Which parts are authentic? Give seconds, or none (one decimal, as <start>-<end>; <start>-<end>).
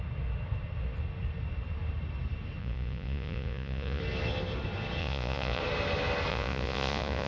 0.0-2.6; 4.0-5.0; 5.6-6.3